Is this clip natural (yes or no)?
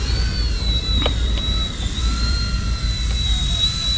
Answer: no